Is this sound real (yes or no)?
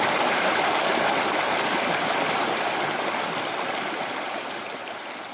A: no